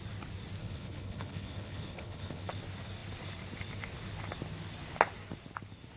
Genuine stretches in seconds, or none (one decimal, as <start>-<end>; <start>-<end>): 0.0-0.6; 2.5-6.0